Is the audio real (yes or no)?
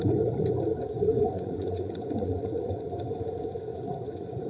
no